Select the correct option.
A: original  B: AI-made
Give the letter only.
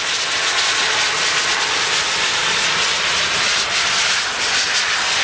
A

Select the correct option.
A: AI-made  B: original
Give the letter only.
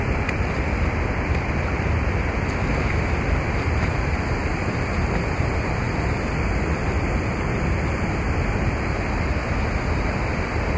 B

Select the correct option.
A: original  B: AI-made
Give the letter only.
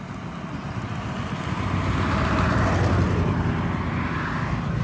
A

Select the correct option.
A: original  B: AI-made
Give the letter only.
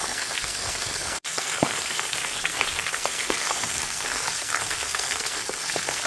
B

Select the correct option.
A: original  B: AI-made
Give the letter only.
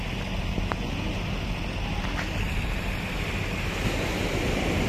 A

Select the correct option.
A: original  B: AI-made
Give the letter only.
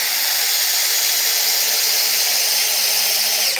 A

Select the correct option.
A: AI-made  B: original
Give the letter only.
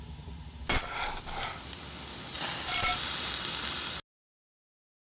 B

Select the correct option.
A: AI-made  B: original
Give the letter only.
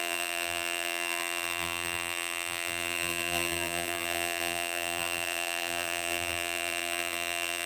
A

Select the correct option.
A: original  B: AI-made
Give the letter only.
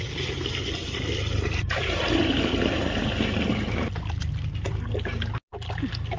A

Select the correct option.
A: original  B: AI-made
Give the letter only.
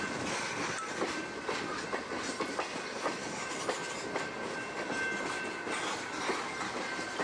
A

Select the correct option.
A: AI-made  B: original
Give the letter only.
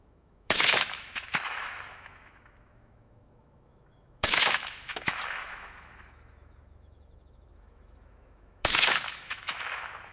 A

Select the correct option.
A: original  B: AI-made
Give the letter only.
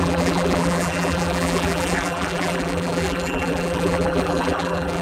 B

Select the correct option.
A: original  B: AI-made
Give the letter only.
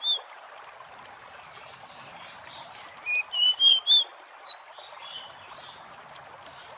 A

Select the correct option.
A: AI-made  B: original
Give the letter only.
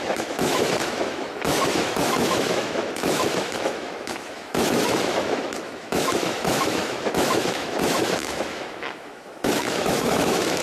A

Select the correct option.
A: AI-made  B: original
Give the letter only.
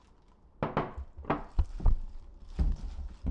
B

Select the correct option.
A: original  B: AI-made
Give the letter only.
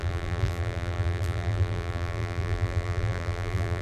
B